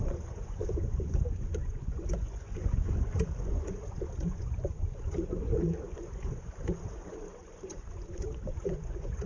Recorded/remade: remade